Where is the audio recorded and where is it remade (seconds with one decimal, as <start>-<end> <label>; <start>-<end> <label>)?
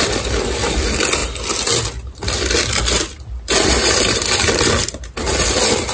0.0-5.9 recorded